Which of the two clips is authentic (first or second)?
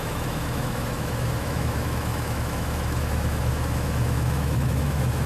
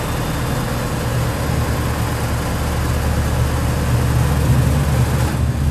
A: second